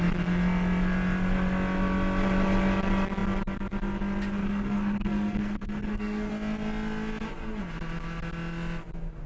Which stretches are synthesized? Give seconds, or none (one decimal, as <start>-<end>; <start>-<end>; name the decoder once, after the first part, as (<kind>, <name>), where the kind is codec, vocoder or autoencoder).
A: 4.4-6.3 (codec, SNAC)

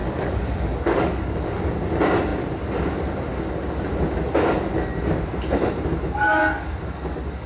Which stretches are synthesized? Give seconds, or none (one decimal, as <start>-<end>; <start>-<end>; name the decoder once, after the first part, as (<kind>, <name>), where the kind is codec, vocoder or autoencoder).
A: 0.0-1.7 (codec, DAC); 6.4-7.5

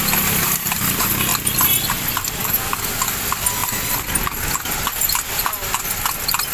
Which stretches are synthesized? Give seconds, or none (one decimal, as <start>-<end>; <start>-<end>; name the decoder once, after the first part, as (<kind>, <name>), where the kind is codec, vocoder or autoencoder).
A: 2.4-2.9 (codec, DAC)